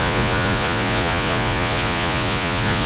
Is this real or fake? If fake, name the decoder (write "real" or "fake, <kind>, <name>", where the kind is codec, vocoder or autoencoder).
fake, vocoder, Vocos